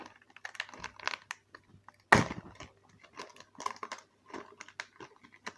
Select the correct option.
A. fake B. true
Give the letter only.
B